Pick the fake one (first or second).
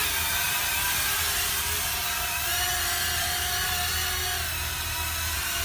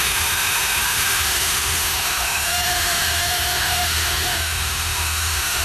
second